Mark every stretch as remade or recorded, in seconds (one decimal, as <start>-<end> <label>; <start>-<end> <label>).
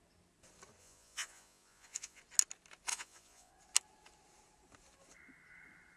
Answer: 0.0-0.8 recorded; 0.8-2.2 remade; 2.2-2.9 recorded; 2.9-3.5 remade; 3.5-6.0 recorded